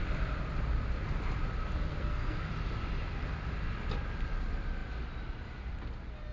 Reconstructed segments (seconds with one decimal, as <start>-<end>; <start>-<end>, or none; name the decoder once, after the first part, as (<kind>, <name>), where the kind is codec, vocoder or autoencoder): 1.9-2.5 (codec, SNAC)